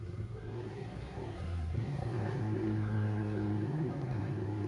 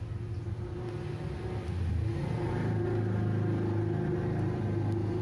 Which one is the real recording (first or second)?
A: second